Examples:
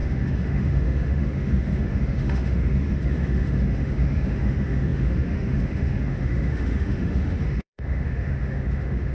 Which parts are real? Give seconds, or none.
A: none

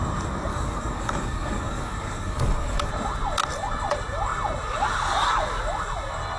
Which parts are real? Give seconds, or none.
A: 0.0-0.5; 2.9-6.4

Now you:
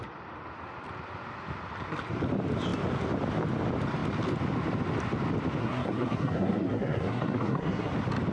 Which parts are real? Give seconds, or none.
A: 0.0-5.6; 7.9-8.3

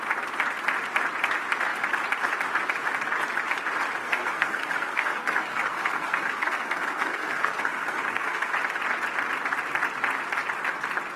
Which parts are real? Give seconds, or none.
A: 0.0-4.0; 8.5-11.2

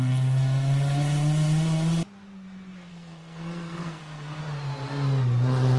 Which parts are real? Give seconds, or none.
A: 0.0-2.9; 4.4-5.8

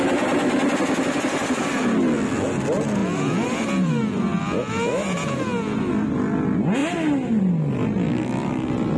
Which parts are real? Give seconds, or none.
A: 0.0-3.0; 3.9-9.0